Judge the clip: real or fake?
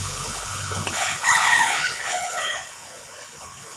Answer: fake